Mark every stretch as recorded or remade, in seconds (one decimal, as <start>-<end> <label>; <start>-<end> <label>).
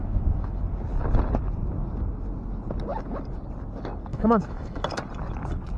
0.0-0.6 remade; 0.6-4.1 recorded; 4.1-4.8 remade; 4.8-5.8 recorded